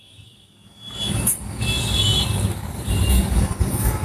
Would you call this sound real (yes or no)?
no